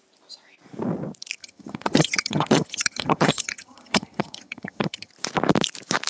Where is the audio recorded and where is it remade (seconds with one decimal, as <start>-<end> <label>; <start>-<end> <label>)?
0.0-1.4 recorded; 1.4-5.1 remade; 5.1-6.1 recorded